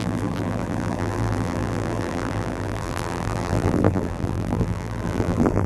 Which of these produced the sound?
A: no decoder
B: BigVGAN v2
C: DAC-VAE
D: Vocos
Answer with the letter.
B